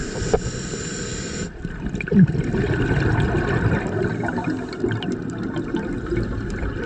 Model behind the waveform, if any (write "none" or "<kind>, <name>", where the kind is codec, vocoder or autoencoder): none